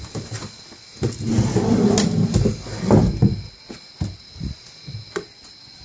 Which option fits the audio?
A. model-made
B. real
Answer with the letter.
B